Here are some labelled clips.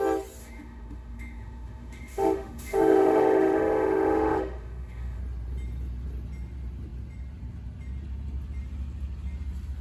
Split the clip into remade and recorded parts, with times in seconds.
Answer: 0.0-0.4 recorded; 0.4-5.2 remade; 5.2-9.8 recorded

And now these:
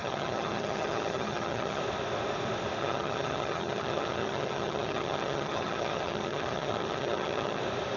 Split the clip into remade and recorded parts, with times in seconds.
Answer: 0.0-1.8 remade; 1.8-2.8 recorded; 2.8-7.6 remade; 7.6-8.0 recorded

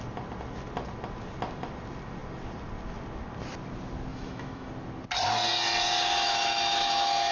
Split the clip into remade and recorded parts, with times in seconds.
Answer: 0.0-4.1 recorded; 4.1-4.7 remade; 4.7-6.1 recorded; 6.1-7.3 remade

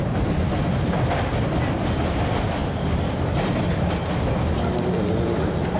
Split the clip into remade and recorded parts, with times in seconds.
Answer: 0.0-5.8 recorded

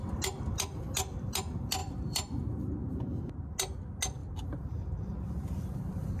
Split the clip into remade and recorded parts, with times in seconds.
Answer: 0.0-1.8 recorded; 1.8-2.6 remade; 2.6-4.2 recorded; 4.2-6.2 remade